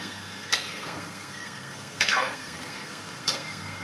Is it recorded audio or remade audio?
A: remade